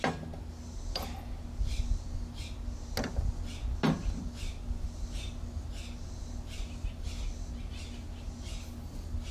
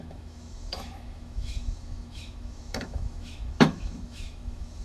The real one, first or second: first